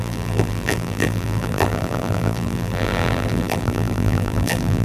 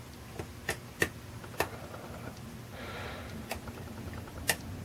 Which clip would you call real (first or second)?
second